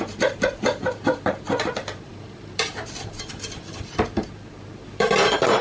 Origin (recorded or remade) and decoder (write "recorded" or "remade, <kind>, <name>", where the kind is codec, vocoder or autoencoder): remade, vocoder, BigVGAN v2